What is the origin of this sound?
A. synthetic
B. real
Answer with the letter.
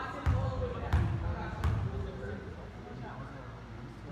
B